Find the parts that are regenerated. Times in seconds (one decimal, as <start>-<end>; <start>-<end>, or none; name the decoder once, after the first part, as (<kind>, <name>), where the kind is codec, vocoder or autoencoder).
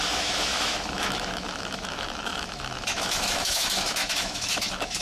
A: 0.0-5.0 (autoencoder, DAC-VAE)